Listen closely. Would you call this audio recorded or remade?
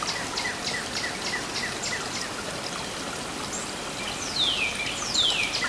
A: recorded